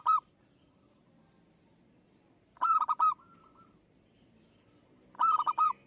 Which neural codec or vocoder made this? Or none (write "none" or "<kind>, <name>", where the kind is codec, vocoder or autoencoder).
vocoder, BigVGAN v2